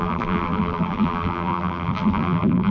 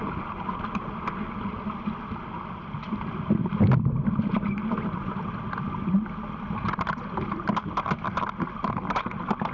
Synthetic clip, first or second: first